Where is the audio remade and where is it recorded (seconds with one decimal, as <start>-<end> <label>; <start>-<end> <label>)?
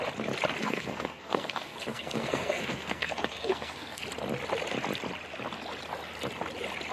0.0-0.6 recorded; 0.6-4.0 remade; 4.0-6.9 recorded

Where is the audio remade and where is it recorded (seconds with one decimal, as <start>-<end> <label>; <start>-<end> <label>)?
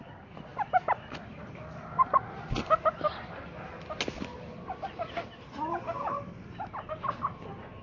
0.0-7.8 recorded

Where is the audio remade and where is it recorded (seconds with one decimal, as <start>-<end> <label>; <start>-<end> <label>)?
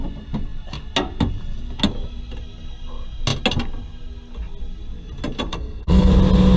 0.0-5.5 recorded; 5.5-6.1 remade; 6.1-6.6 recorded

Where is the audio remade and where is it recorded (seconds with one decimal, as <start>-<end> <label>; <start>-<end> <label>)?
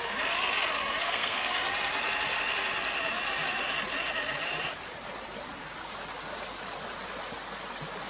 0.0-1.0 recorded; 1.0-1.5 remade; 1.5-8.1 recorded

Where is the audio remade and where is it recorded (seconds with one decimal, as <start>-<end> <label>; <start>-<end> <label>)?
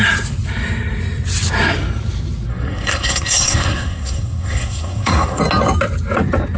0.0-2.5 recorded; 2.5-5.4 remade; 5.4-6.6 recorded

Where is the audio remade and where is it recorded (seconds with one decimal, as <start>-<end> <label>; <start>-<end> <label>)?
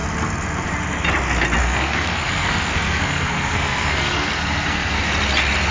0.0-1.6 recorded; 1.6-5.0 remade; 5.0-5.7 recorded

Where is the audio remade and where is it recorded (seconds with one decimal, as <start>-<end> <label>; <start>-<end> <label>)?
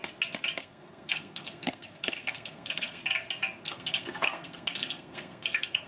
0.0-0.6 recorded; 0.6-3.0 remade; 3.0-3.6 recorded; 3.6-5.9 remade